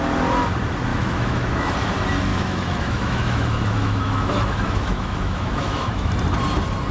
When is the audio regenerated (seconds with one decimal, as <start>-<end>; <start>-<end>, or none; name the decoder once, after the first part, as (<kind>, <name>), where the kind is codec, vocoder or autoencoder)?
0.9-1.7 (autoencoder, DAC-VAE); 2.3-6.1